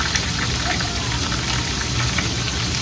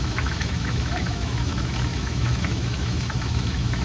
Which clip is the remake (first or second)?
second